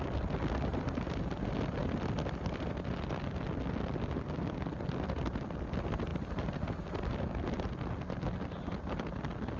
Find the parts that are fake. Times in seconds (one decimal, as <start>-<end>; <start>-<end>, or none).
none